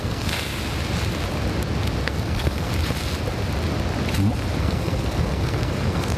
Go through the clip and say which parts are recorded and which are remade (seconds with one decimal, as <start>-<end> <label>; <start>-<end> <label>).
0.0-0.5 remade; 0.5-2.0 recorded; 2.0-2.7 remade; 2.7-4.6 recorded; 4.6-6.2 remade